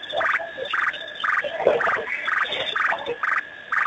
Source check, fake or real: real